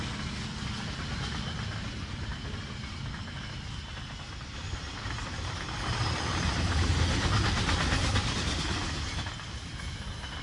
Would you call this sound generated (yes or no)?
no